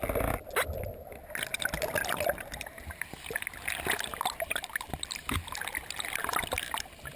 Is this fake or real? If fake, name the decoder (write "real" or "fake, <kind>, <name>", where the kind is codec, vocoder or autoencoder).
real